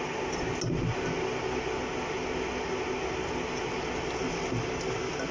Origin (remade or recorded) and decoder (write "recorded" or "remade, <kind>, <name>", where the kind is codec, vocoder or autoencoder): recorded